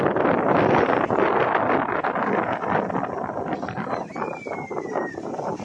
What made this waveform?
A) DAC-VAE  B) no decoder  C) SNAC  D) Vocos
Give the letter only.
B